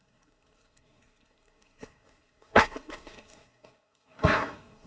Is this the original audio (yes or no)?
no